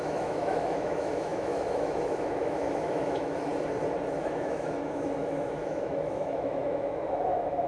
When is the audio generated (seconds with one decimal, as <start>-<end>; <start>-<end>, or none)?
0.0-3.5; 4.1-7.7